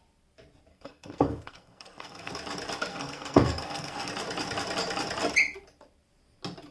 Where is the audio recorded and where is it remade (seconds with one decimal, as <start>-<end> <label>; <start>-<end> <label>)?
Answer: 0.0-0.7 recorded; 0.7-2.3 remade; 2.3-2.9 recorded; 2.9-4.1 remade; 4.1-6.7 recorded

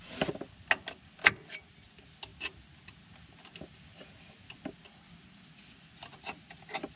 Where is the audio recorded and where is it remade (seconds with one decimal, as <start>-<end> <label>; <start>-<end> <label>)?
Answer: 0.0-7.0 recorded

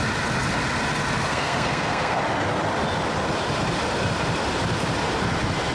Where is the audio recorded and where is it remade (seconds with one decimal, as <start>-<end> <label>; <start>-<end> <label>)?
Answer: 0.0-1.3 recorded; 1.3-2.2 remade; 2.2-5.7 recorded

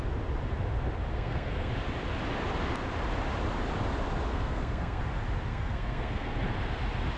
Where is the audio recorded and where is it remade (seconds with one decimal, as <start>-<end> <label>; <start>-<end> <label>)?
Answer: 0.0-1.1 recorded; 1.1-1.7 remade; 1.7-4.3 recorded; 4.3-5.0 remade; 5.0-5.5 recorded; 5.5-6.4 remade; 6.4-7.2 recorded

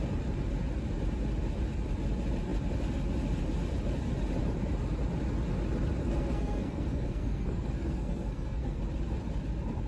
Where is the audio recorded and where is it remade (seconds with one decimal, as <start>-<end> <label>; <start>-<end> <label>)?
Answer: 0.0-6.0 recorded; 6.0-8.8 remade; 8.8-9.9 recorded

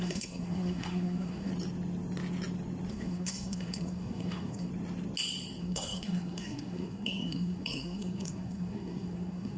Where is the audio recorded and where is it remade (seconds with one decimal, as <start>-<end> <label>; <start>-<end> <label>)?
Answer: 0.0-1.5 remade; 1.5-2.9 recorded; 2.9-4.7 remade; 4.7-5.6 recorded; 5.6-9.6 remade

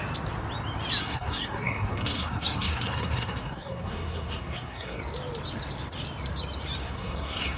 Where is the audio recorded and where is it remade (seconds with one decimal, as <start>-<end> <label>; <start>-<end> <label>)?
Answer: 0.0-1.0 recorded; 1.0-5.0 remade; 5.0-6.8 recorded; 6.8-7.6 remade

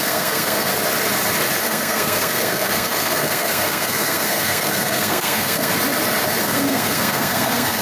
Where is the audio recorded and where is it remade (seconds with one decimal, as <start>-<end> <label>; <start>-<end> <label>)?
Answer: 0.0-0.7 remade; 0.7-1.6 recorded; 1.6-5.7 remade; 5.7-6.4 recorded; 6.4-7.8 remade